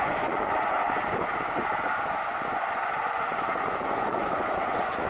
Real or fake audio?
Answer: fake